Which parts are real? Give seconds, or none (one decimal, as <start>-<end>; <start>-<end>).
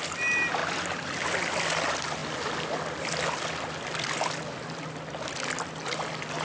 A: 0.0-6.4